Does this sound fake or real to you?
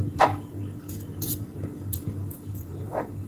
fake